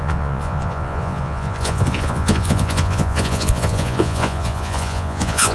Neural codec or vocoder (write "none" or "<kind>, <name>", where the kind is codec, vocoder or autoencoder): vocoder, Vocos